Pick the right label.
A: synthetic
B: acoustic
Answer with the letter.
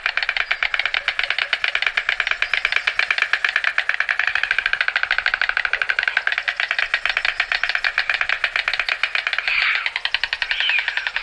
B